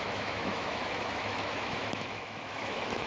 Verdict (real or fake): fake